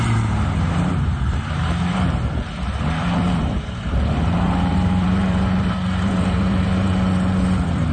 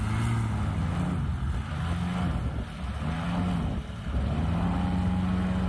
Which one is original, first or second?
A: second